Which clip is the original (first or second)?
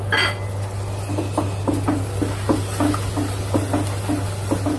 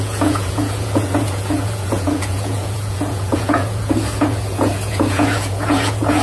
first